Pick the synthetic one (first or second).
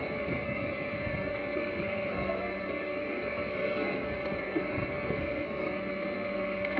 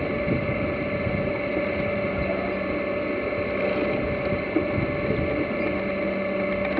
first